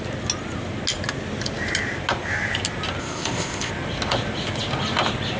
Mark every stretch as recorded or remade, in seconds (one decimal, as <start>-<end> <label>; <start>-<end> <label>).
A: 0.0-3.0 recorded; 3.0-3.7 remade; 3.7-5.4 recorded